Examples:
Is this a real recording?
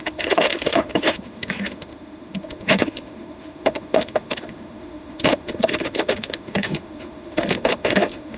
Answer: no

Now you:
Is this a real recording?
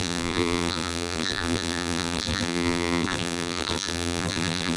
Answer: no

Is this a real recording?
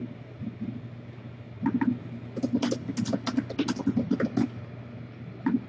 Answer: yes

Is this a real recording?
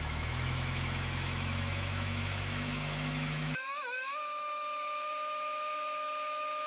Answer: no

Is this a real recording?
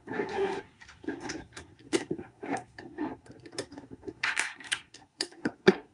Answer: no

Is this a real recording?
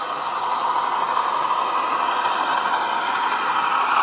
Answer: yes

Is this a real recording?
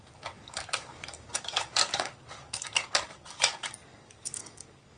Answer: no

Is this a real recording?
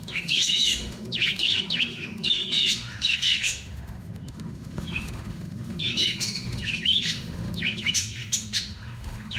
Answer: no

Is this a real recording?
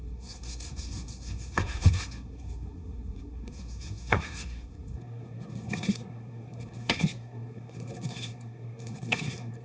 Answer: no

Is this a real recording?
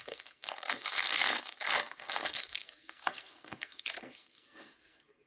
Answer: no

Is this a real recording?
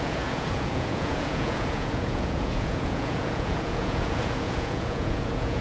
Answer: no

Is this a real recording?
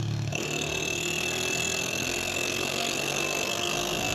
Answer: no